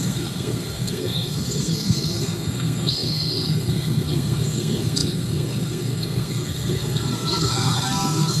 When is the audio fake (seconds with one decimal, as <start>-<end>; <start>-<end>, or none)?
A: 0.0-8.4